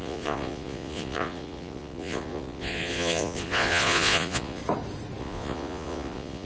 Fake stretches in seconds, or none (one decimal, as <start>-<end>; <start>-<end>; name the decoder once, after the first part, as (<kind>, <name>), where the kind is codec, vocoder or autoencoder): 0.0-4.6 (vocoder, Vocos); 5.2-6.5